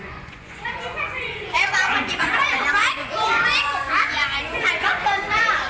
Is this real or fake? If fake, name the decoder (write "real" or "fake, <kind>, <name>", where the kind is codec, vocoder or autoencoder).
fake, vocoder, Vocos